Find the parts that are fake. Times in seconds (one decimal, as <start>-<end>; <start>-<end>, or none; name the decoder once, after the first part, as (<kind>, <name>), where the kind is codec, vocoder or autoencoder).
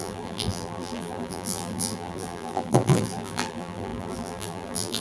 0.0-5.0 (vocoder, BigVGAN v2)